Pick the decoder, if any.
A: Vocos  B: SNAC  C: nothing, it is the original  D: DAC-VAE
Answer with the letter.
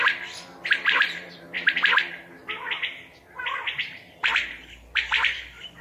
C